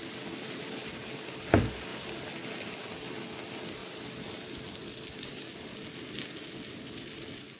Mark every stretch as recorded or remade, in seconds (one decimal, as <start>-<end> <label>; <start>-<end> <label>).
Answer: 0.0-7.6 recorded

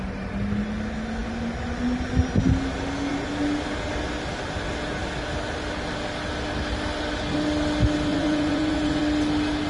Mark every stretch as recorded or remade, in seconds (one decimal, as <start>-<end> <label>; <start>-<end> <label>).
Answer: 0.0-8.1 recorded; 8.1-9.0 remade; 9.0-9.7 recorded

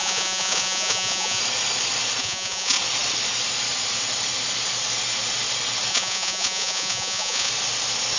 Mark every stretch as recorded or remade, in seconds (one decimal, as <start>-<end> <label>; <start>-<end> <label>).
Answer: 0.0-1.4 remade; 1.4-2.2 recorded; 2.2-2.8 remade; 2.8-5.9 recorded; 5.9-7.5 remade; 7.5-8.2 recorded

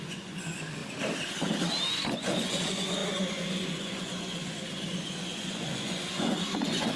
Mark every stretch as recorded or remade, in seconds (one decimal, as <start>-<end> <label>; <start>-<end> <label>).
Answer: 0.0-0.8 remade; 0.8-1.9 recorded; 1.9-7.0 remade

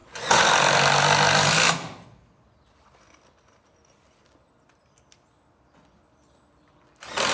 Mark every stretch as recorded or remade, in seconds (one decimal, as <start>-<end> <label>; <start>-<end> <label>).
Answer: 0.0-0.5 remade; 0.5-7.3 recorded

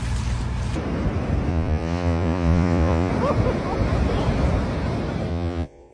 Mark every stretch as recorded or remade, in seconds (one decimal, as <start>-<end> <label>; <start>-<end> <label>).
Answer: 0.0-1.5 recorded; 1.5-3.1 remade; 3.1-5.3 recorded; 5.3-5.9 remade

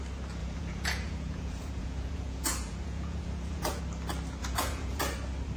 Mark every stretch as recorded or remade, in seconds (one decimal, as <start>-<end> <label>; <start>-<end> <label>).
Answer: 0.0-0.4 recorded; 0.4-3.8 remade; 3.8-4.4 recorded; 4.4-5.0 remade; 5.0-5.6 recorded